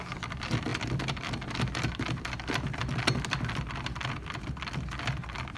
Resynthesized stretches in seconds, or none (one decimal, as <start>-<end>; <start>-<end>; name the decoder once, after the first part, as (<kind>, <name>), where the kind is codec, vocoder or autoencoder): none